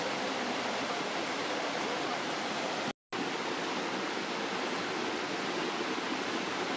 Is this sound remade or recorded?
recorded